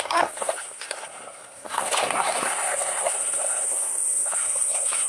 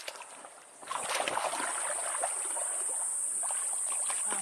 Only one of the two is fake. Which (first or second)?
first